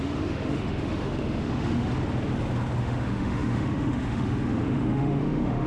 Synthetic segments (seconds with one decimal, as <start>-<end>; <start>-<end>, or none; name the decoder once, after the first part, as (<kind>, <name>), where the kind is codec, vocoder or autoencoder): 0.0-1.9 (autoencoder, DAC-VAE); 2.8-5.7

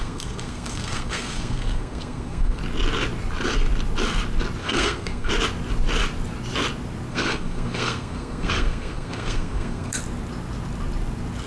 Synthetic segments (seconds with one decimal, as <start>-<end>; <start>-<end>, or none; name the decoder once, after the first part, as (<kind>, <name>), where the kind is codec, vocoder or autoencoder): 0.0-2.6 (codec, SNAC); 4.6-5.3; 7.1-10.0

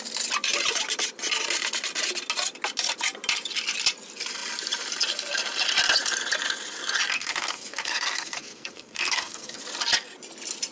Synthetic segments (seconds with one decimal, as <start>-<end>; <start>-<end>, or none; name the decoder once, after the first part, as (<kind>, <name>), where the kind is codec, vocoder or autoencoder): 7.1-9.6 (codec, SNAC)

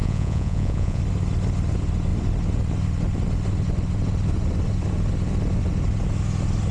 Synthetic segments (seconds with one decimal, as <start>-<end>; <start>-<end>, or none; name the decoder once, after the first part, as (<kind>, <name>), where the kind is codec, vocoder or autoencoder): 0.0-1.0 (vocoder, Vocos)

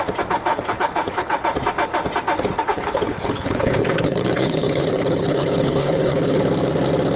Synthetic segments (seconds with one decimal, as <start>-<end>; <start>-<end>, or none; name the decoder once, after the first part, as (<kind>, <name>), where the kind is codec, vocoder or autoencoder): 0.5-1.4 (codec, HILCodec); 2.7-6.4

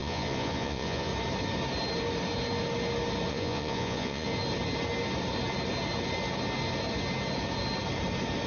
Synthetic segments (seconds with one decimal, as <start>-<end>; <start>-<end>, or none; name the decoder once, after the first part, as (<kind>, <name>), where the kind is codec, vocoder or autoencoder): 0.0-1.1 (vocoder, Vocos); 3.3-4.3